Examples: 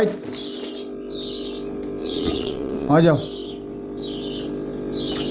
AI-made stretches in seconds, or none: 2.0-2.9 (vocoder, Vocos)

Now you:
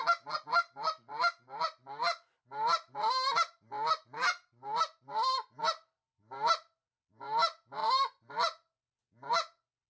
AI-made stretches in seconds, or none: none

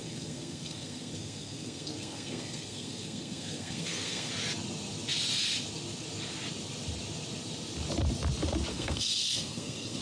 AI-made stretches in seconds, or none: 0.0-4.3 (codec, SNAC); 8.7-10.0

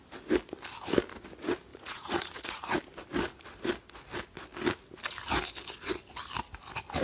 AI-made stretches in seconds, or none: 1.7-2.8 (vocoder, Vocos)

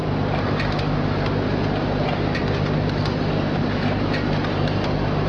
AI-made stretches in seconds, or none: none

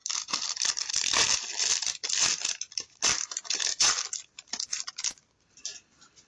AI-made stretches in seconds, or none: none